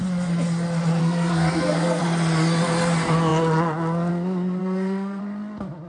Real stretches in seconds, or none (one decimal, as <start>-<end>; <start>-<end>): 0.0-1.0; 2.0-4.6; 5.2-5.9